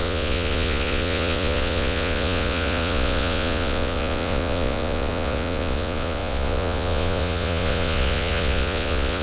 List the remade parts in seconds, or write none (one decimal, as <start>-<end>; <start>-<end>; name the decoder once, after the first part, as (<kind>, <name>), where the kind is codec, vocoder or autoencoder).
0.0-9.2 (vocoder, Vocos)